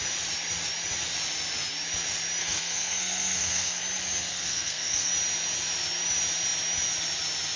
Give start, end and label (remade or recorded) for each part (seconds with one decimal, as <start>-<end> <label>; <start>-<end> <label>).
0.0-2.4 recorded; 2.4-3.8 remade; 3.8-4.3 recorded; 4.3-5.1 remade; 5.1-7.6 recorded